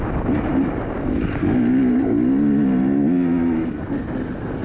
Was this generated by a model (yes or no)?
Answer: no